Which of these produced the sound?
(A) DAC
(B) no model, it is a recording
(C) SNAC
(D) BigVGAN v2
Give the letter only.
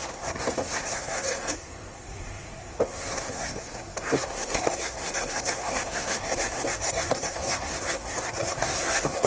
C